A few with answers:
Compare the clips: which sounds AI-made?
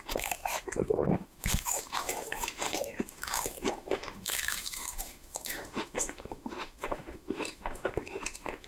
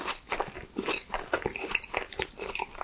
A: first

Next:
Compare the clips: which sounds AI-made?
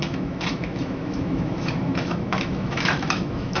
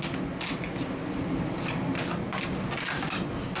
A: first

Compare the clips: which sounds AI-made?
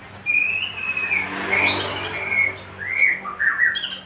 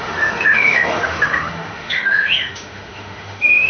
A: second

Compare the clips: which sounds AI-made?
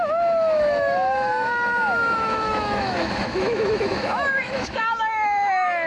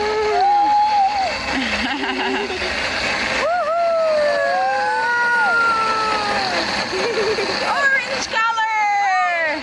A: first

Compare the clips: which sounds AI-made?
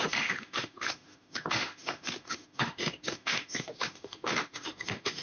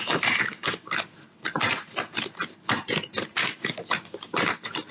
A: first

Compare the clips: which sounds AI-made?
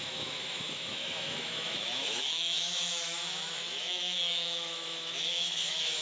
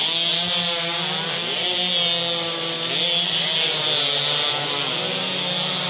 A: first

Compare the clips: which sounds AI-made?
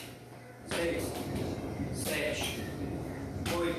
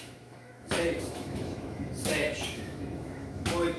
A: second